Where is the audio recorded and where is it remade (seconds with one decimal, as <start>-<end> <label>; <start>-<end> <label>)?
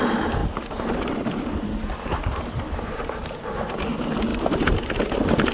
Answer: 0.0-0.4 recorded; 0.4-3.7 remade; 3.7-4.3 recorded; 4.3-5.5 remade